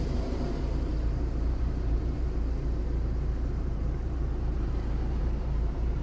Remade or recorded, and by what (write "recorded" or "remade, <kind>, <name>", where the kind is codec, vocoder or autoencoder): remade, vocoder, BigVGAN v2